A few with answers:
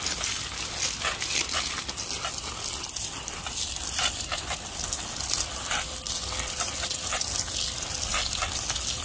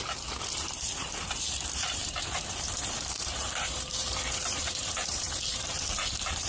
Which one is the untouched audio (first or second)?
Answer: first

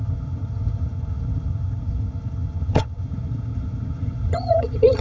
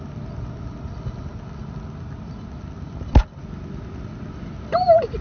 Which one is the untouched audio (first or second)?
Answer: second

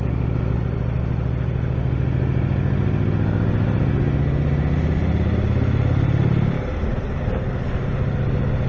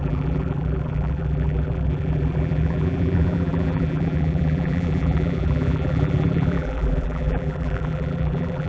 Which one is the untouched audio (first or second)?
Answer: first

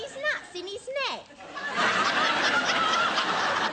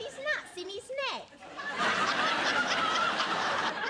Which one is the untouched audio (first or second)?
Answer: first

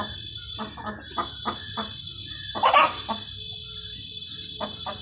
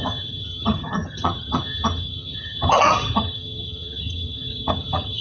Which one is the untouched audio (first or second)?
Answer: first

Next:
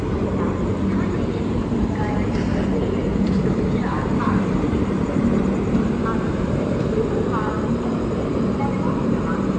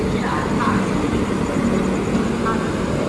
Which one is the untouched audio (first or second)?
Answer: second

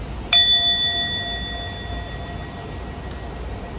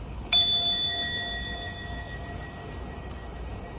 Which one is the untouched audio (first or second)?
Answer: first